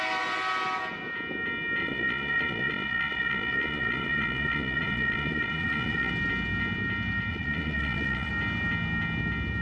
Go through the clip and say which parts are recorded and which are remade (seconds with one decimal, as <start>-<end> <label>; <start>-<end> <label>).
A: 0.0-1.8 recorded; 1.8-6.1 remade; 6.1-7.3 recorded; 7.3-8.3 remade; 8.3-9.6 recorded